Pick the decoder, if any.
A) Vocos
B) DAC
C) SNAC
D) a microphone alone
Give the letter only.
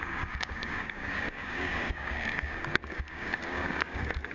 B